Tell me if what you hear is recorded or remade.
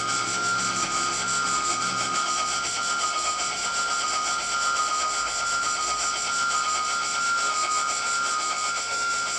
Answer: remade